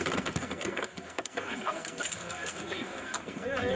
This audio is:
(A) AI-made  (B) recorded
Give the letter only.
A